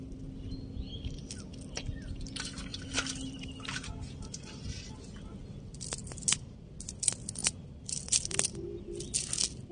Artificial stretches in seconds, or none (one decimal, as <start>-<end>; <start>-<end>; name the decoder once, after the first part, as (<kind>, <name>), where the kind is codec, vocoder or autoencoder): none